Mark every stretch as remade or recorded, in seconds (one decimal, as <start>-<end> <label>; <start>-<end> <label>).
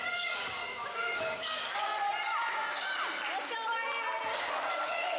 0.0-1.9 remade; 1.9-4.7 recorded; 4.7-5.2 remade